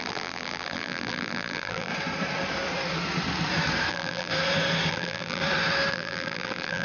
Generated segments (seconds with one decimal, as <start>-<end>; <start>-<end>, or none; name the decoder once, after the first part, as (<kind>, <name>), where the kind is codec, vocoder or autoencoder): 0.0-1.9 (vocoder, BigVGAN v2); 3.9-4.3; 4.9-5.4; 5.9-6.8